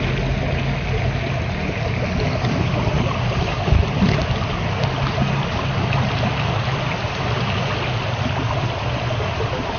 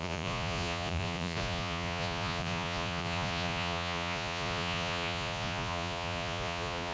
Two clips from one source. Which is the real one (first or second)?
first